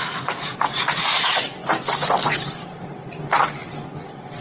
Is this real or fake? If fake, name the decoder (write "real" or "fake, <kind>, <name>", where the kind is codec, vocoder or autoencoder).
fake, vocoder, BigVGAN v2